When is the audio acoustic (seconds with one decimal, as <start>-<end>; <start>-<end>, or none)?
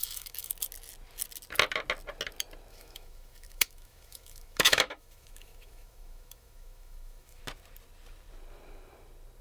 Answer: 0.5-2.7; 7.4-9.4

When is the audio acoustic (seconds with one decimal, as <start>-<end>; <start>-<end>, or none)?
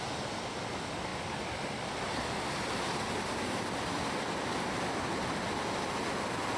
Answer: 0.0-6.6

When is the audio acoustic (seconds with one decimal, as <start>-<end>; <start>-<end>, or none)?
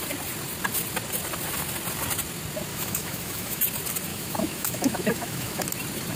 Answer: 0.0-2.7; 3.6-4.1; 5.6-6.2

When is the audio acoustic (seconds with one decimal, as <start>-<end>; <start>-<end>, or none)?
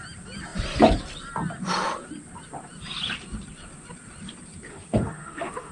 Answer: 0.0-4.7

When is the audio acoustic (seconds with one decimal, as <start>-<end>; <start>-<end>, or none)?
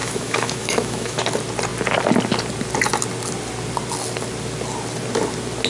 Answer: 1.2-5.7